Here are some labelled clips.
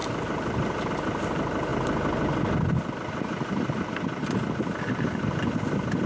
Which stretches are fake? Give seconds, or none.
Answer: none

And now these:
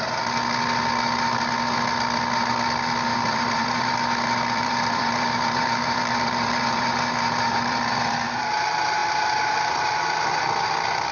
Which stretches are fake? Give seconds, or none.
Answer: 3.1-8.4 (vocoder, BigVGAN v2)

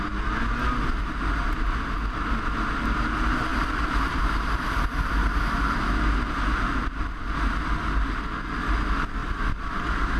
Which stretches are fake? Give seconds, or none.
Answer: 3.5-5.4 (vocoder, BigVGAN v2); 9.2-10.2